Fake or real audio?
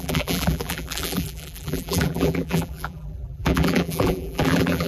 fake